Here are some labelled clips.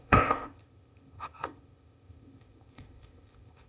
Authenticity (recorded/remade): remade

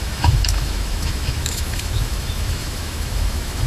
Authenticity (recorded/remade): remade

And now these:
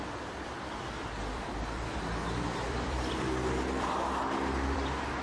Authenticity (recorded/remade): remade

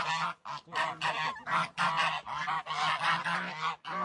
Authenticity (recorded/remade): recorded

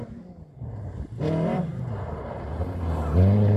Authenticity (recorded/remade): recorded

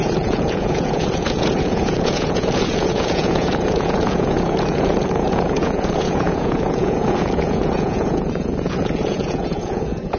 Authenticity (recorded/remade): remade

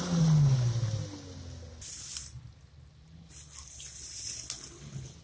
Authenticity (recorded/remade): recorded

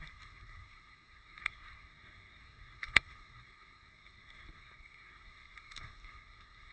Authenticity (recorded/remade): remade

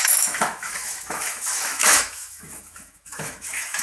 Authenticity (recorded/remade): remade